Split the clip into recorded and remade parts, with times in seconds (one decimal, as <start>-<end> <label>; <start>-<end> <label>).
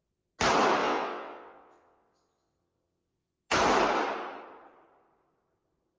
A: 0.0-0.8 recorded; 0.8-3.3 remade; 3.3-6.0 recorded